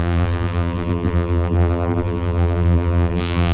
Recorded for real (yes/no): no